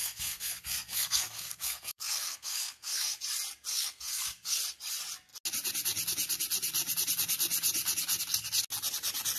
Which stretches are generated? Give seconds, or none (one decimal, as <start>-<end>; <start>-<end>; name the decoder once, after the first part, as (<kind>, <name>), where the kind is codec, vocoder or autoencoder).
0.0-3.2 (codec, SNAC); 3.7-4.6